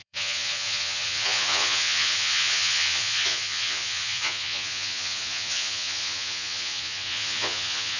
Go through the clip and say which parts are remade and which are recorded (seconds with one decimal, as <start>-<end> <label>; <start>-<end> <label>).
0.0-8.0 remade